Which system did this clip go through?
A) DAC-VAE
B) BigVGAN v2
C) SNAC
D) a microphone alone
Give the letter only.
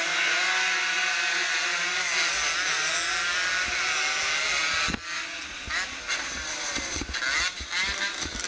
D